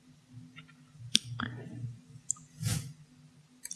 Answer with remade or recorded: recorded